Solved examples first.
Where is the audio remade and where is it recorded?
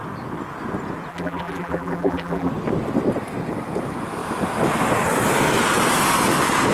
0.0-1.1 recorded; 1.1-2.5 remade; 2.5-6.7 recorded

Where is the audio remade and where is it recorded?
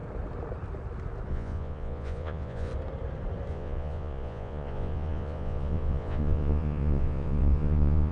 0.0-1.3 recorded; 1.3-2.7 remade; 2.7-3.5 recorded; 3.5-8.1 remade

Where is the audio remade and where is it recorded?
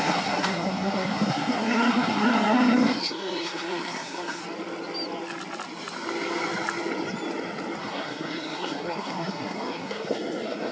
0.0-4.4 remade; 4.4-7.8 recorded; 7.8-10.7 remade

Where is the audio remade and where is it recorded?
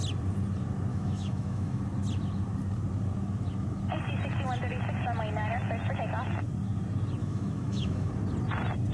0.0-0.9 recorded; 0.9-1.8 remade; 1.8-7.2 recorded; 7.2-8.1 remade; 8.1-8.9 recorded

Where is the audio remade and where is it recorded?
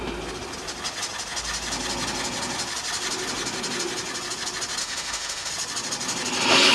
0.0-4.8 recorded; 4.8-5.5 remade; 5.5-6.7 recorded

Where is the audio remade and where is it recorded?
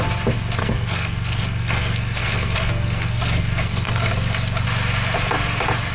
0.0-0.6 recorded; 0.6-4.1 remade; 4.1-5.9 recorded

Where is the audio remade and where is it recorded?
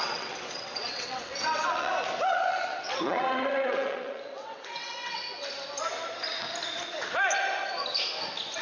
0.0-1.9 remade; 1.9-2.3 recorded; 2.3-5.2 remade; 5.2-8.6 recorded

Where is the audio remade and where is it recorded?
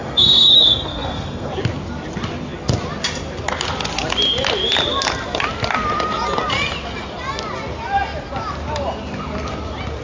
0.0-1.5 remade; 1.5-10.0 recorded